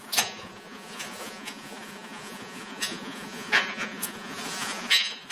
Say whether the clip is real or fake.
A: fake